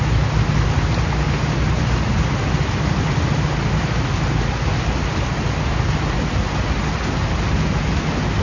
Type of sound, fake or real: real